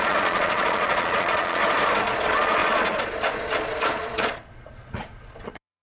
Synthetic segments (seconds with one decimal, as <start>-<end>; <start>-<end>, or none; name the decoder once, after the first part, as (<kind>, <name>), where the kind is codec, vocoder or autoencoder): 0.0-1.6 (vocoder, Vocos); 2.2-5.8